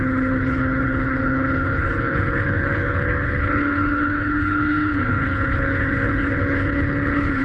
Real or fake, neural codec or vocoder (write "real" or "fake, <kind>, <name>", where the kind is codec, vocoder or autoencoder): fake, codec, HILCodec